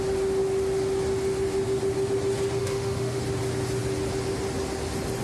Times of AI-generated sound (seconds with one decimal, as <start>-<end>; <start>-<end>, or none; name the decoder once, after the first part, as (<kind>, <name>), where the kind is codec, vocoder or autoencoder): 2.6-3.2 (autoencoder, DAC-VAE)